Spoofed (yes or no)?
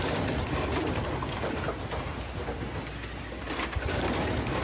no